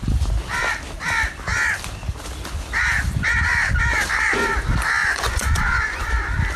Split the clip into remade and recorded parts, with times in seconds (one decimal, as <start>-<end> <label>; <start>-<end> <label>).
0.0-5.0 recorded; 5.0-6.1 remade; 6.1-6.6 recorded